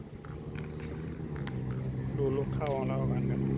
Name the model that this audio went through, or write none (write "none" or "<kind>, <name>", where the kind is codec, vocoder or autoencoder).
none